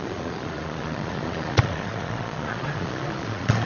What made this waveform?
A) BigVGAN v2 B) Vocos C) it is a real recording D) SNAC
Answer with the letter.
B